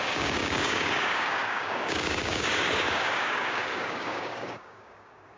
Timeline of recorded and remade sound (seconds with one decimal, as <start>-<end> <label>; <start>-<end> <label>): 0.0-5.4 remade